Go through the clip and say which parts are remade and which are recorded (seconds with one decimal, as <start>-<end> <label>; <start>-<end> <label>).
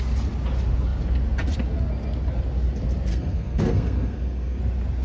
0.0-3.1 recorded; 3.1-4.6 remade; 4.6-5.0 recorded